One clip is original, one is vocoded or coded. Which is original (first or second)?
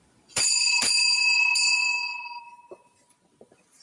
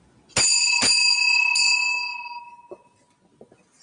second